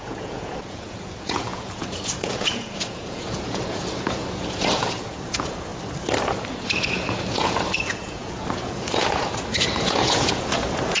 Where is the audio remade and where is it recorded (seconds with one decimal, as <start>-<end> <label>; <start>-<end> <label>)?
0.0-5.7 remade; 5.7-6.5 recorded; 6.5-11.0 remade